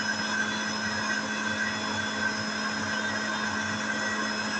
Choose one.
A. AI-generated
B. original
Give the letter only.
B